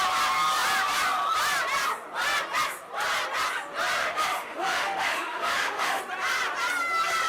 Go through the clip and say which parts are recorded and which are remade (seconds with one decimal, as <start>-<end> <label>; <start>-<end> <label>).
0.0-4.0 recorded; 4.0-6.0 remade; 6.0-7.3 recorded